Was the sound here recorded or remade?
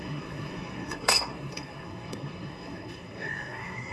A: remade